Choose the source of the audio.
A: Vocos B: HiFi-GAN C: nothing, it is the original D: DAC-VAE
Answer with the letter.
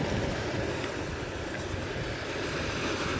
C